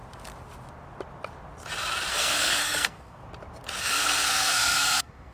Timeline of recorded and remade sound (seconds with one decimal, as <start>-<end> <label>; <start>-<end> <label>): 0.0-2.1 recorded; 2.1-3.2 remade; 3.2-3.8 recorded; 3.8-5.3 remade